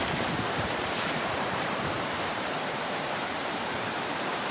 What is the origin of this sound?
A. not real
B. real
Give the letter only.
A